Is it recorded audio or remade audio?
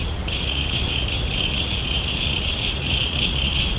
remade